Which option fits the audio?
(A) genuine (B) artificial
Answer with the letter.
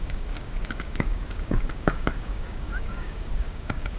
B